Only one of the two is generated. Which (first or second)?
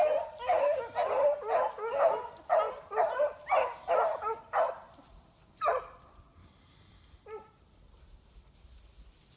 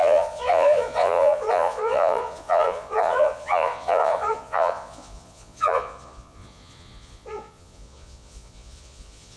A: second